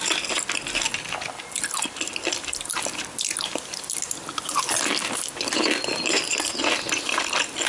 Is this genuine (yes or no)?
yes